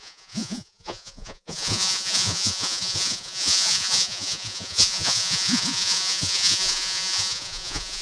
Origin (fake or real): fake